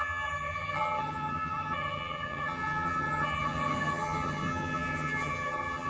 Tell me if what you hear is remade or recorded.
remade